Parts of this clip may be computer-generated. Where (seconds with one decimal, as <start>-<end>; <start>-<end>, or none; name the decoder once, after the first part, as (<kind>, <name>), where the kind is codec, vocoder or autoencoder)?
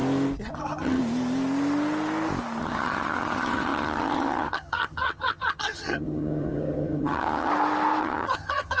0.5-1.0 (vocoder, HiFi-GAN); 2.6-7.5; 8.0-8.8